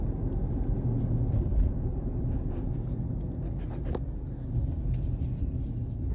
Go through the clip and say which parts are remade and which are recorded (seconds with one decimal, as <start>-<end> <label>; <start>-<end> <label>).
0.0-6.1 recorded